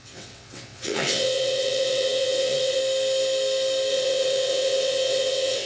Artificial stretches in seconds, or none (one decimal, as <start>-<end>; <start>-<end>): 0.0-2.8; 3.9-5.7